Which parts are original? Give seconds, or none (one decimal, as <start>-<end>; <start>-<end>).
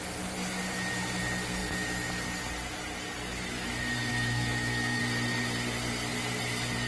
0.0-4.1; 5.0-6.9